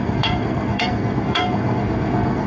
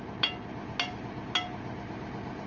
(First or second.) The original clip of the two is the second